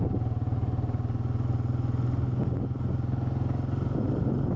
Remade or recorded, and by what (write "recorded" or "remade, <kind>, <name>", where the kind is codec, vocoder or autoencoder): recorded